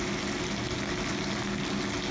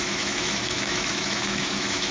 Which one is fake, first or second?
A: second